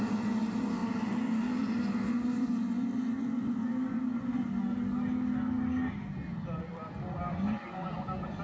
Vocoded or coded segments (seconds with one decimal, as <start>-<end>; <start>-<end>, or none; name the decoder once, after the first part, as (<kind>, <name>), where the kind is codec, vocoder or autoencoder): none